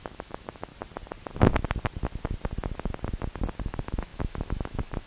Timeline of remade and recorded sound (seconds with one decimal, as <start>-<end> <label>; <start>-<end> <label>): 0.0-0.7 remade; 0.7-3.6 recorded; 3.6-5.1 remade